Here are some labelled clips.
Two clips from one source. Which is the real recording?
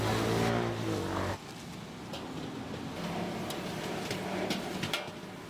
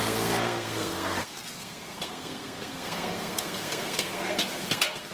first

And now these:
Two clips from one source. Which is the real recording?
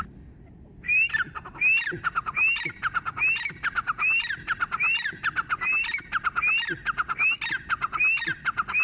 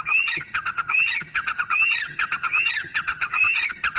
first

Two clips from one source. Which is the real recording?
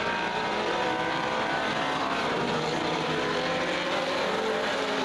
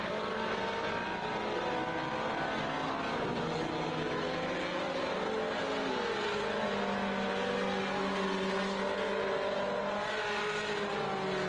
second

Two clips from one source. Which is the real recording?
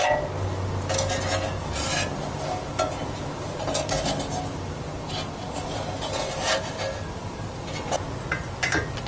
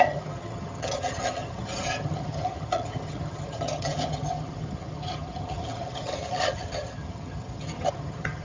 first